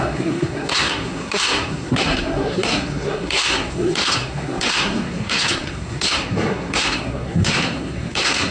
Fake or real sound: fake